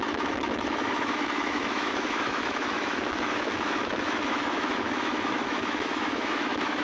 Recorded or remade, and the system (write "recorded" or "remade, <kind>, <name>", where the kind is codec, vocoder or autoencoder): remade, autoencoder, DAC-VAE